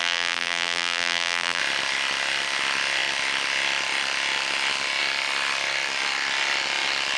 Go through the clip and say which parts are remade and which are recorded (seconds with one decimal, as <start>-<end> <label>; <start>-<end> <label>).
0.0-1.6 remade; 1.6-7.2 recorded